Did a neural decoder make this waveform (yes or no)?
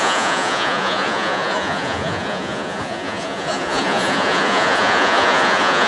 yes